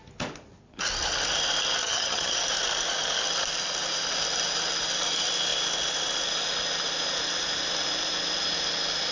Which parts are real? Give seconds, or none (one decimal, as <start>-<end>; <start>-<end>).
0.0-1.8; 2.3-9.1